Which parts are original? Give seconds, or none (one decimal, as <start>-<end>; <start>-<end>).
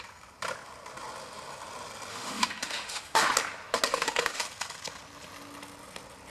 0.0-2.1; 3.3-3.9; 4.4-6.3